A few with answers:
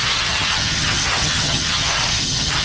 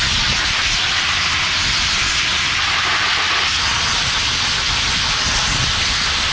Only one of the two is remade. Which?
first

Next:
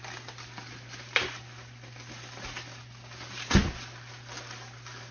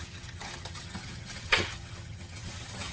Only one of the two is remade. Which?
second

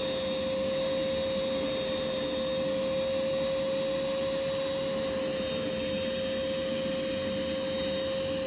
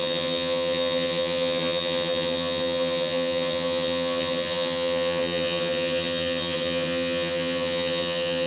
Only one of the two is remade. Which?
second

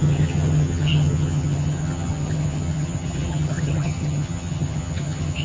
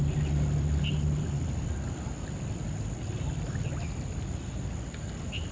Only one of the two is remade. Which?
first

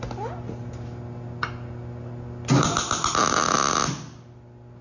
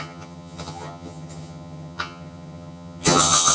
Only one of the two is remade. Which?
second